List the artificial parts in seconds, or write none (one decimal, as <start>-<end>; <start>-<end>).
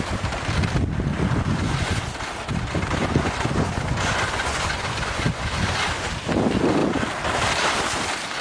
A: 1.1-2.0; 3.0-6.1